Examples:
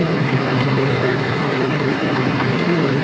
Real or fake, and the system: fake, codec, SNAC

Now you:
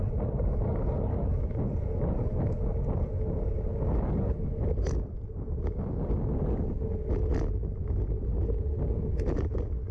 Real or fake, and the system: real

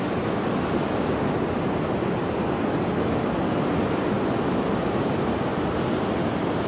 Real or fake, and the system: real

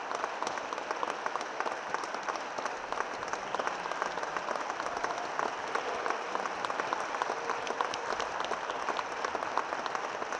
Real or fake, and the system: real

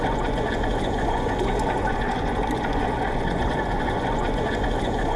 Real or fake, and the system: fake, vocoder, Vocos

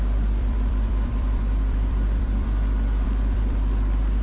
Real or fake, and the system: fake, vocoder, BigVGAN v2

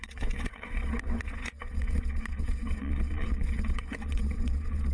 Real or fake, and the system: fake, vocoder, WaveNeXt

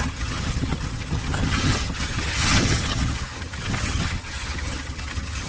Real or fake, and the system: fake, vocoder, HiFi-GAN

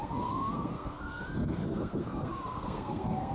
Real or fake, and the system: fake, codec, SNAC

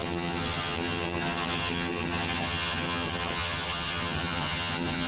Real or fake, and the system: fake, vocoder, HiFi-GAN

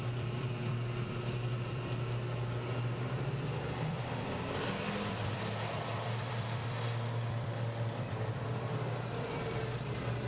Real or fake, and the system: fake, vocoder, BigVGAN v2